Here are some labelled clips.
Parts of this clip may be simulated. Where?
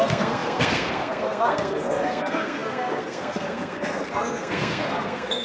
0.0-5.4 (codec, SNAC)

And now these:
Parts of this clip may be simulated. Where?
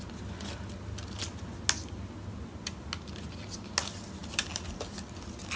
none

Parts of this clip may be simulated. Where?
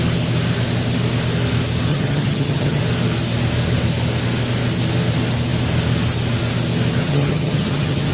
1.9-2.8 (vocoder, HiFi-GAN); 7.0-8.1